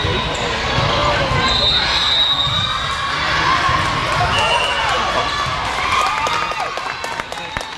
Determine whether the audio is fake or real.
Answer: real